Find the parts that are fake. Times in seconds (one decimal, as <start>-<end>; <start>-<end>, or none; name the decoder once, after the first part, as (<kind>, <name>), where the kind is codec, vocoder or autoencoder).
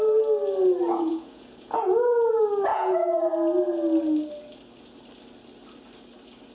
0.9-2.3 (vocoder, Vocos); 2.7-3.3